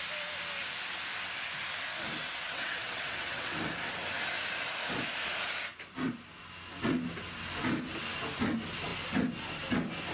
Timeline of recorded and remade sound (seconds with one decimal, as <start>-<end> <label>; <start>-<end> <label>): 0.0-2.2 recorded; 2.2-3.6 remade; 3.6-10.1 recorded